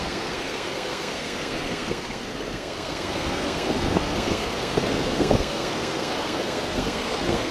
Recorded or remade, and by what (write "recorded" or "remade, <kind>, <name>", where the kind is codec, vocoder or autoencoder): remade, codec, SNAC